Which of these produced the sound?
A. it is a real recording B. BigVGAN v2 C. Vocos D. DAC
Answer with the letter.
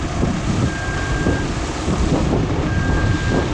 A